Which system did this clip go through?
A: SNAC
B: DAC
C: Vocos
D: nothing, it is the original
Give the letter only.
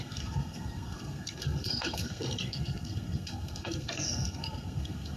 A